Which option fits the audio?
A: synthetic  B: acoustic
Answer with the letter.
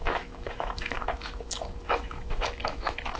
A